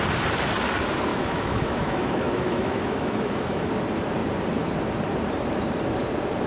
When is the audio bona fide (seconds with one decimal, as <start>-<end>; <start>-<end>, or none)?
0.0-1.1; 3.7-6.5